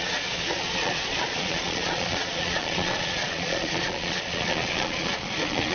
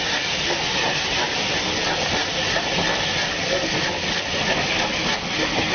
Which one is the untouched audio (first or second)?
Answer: second